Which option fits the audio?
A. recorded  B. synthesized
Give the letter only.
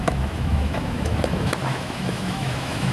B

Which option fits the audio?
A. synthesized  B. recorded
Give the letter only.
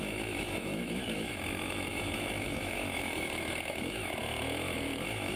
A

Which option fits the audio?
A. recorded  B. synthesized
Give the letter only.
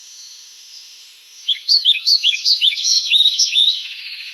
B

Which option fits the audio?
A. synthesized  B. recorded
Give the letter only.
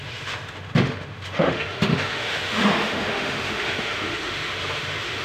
A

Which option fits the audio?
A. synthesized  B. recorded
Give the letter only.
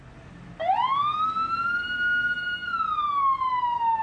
B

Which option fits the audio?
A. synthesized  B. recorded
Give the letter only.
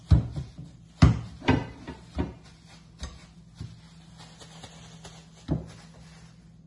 B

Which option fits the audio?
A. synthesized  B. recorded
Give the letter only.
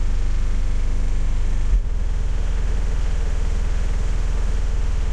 A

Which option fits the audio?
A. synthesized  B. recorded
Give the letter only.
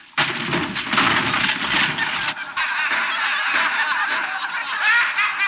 B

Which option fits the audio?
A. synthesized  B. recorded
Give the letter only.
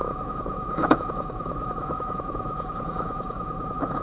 A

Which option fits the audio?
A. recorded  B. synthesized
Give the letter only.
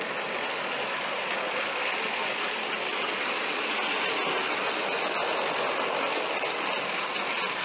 A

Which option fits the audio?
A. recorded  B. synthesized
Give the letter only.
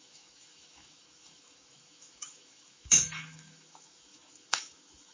B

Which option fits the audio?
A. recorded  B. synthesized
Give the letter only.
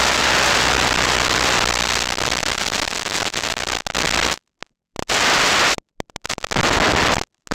A